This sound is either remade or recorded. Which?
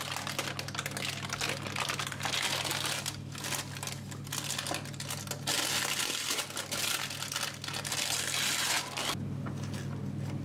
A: recorded